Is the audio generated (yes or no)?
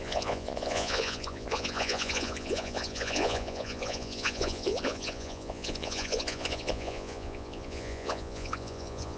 yes